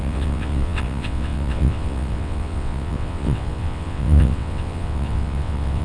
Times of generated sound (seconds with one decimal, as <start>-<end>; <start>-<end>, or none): 0.0-5.8

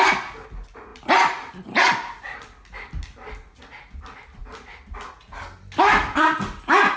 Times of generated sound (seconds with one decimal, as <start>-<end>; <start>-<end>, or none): none

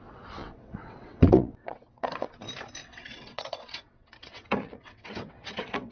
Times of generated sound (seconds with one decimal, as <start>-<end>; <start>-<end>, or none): 0.4-2.3; 2.8-5.9

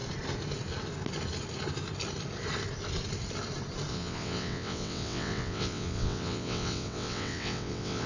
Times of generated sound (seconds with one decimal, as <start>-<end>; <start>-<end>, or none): 3.9-8.1

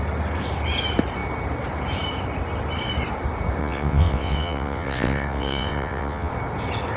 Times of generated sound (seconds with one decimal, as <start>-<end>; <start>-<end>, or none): 3.6-6.3